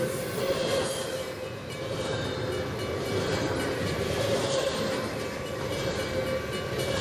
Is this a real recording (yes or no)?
yes